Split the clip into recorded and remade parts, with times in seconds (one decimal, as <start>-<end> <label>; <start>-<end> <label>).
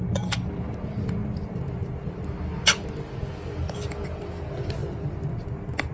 0.0-4.8 recorded; 4.8-5.9 remade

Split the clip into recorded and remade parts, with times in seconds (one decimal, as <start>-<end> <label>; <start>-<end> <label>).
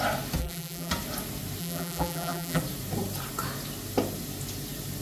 0.0-0.4 recorded; 0.4-0.9 remade; 0.9-1.6 recorded; 1.6-2.6 remade; 2.6-5.0 recorded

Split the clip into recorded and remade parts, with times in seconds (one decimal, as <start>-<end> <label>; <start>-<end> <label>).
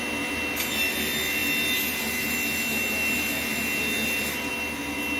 0.0-5.2 recorded